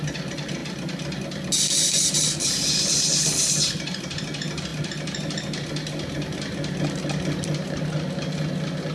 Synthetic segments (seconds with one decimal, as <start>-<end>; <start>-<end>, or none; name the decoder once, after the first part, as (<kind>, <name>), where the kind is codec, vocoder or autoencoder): none